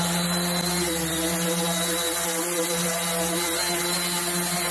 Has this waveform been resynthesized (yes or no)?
no